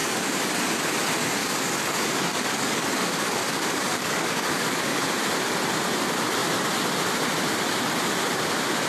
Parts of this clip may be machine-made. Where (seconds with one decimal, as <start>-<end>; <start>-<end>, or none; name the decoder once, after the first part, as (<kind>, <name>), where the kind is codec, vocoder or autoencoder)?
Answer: 0.0-0.5 (codec, DAC); 1.4-5.0